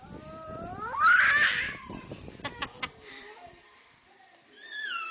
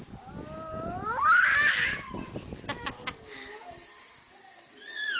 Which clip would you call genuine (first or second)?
second